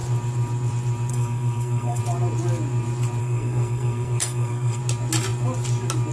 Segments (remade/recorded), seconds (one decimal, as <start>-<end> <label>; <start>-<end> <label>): 0.0-1.1 recorded; 1.1-2.0 remade; 2.0-3.2 recorded; 3.2-4.8 remade; 4.8-6.1 recorded